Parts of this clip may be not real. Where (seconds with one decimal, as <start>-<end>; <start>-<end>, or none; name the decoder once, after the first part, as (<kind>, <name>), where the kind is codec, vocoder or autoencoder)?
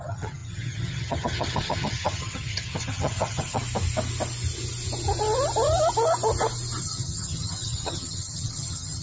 0.0-3.6 (vocoder, HiFi-GAN); 6.8-9.0